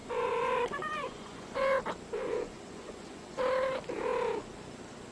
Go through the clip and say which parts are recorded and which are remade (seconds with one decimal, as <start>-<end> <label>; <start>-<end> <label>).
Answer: 0.0-1.8 remade; 1.8-2.2 recorded; 2.2-3.4 remade; 3.4-5.1 recorded